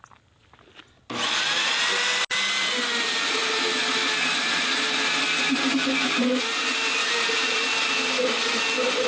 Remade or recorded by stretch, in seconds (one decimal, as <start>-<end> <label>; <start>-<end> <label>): 0.0-7.0 recorded; 7.0-7.9 remade; 7.9-9.1 recorded